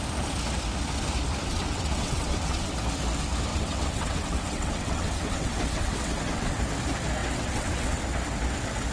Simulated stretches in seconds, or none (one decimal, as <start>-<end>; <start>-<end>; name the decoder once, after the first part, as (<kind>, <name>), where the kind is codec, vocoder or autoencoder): 1.4-2.7 (vocoder, WaveNeXt); 3.5-6.6; 7.2-8.0